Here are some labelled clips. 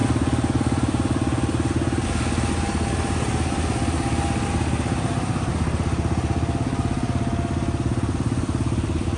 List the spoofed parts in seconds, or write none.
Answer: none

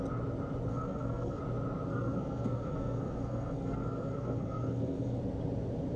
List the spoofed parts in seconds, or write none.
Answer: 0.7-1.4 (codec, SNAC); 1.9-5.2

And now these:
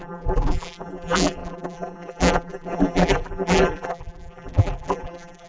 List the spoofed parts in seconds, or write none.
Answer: 0.0-5.5 (vocoder, BigVGAN v2)

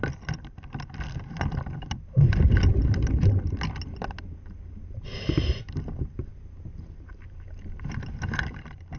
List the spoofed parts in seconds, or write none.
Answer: none

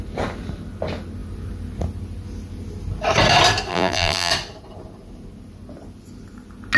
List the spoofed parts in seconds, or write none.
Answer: 3.7-4.3 (vocoder, BigVGAN v2)

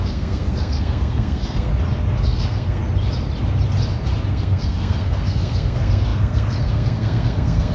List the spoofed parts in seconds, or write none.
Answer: 0.0-1.7 (codec, SNAC); 2.2-2.8; 4.3-7.7

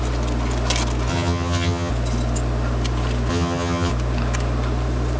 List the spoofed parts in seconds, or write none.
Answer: 1.1-1.9 (vocoder, HiFi-GAN); 3.3-3.9

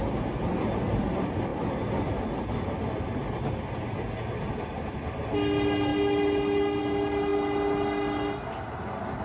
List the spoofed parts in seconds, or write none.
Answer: none